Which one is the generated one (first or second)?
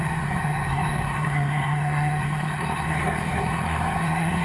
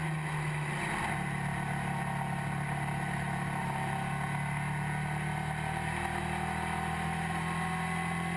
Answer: first